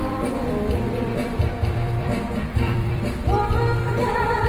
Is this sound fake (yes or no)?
yes